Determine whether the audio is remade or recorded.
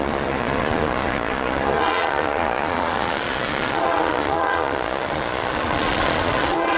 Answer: remade